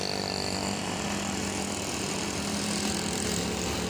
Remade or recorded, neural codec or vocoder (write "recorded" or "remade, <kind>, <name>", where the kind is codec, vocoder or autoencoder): recorded